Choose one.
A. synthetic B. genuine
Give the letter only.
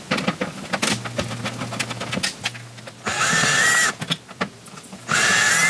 B